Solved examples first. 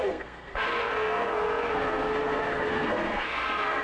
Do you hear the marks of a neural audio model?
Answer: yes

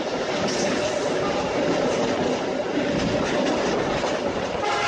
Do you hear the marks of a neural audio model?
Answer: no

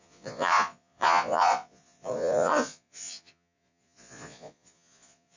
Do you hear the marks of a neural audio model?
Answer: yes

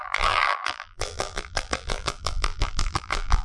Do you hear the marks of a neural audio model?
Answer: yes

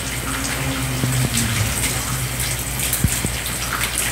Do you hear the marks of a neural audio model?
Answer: no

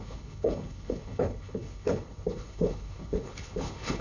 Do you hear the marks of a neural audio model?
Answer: yes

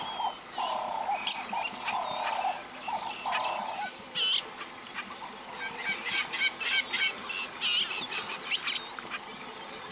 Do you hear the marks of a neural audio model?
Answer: no